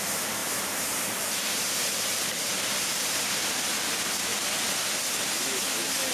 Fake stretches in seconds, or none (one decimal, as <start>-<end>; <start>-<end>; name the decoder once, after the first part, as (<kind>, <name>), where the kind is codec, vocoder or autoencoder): 0.0-4.3 (vocoder, BigVGAN v2)